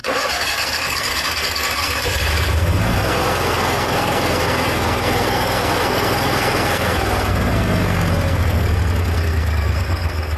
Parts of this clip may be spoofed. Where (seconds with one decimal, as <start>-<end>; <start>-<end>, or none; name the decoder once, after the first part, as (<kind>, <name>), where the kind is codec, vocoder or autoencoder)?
0.0-10.4 (codec, SNAC)